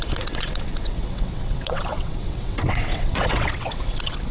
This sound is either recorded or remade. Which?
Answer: remade